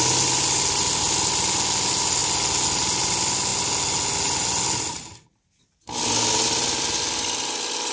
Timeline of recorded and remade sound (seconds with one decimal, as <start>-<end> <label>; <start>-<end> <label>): 0.0-7.9 recorded